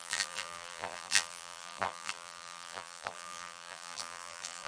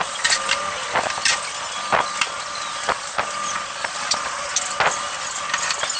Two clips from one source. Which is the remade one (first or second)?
first